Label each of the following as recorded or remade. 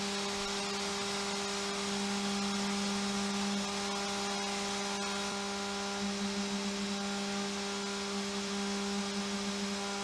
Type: recorded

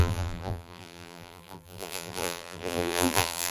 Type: remade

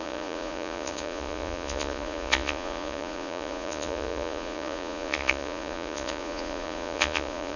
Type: remade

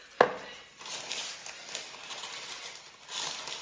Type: recorded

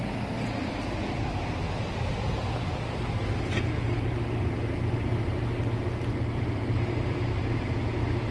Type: recorded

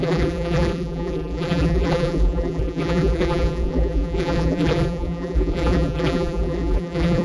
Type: remade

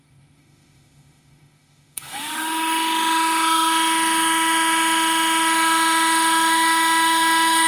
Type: remade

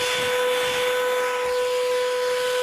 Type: recorded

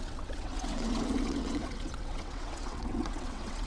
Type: remade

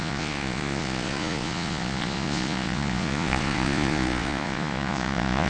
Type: remade